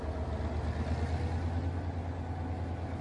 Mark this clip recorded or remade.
recorded